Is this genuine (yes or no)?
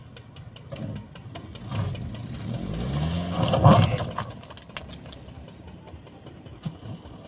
yes